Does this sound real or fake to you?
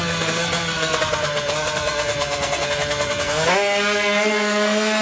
fake